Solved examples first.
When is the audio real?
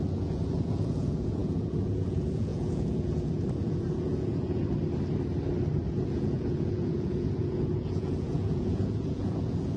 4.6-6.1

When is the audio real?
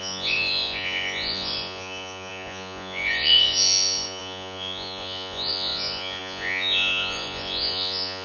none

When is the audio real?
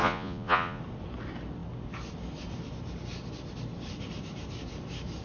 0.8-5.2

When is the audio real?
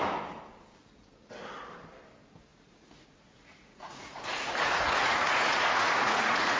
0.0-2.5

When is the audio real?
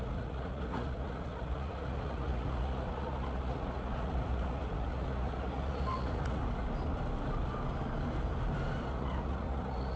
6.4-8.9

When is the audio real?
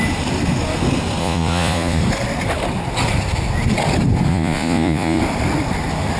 0.0-1.2; 2.0-4.3; 5.2-6.2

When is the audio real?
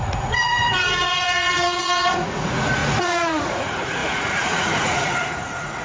none